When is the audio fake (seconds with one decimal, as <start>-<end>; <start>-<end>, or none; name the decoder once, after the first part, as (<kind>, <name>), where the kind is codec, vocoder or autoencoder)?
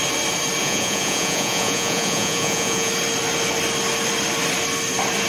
0.6-2.9 (vocoder, Vocos)